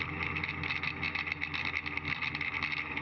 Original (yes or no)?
yes